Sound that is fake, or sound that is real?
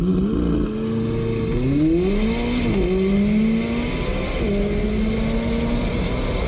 real